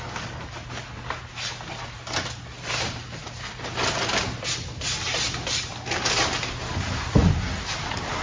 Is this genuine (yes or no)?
yes